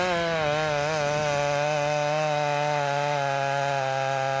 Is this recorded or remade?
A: recorded